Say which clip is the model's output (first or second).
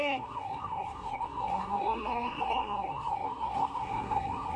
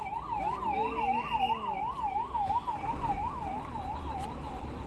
first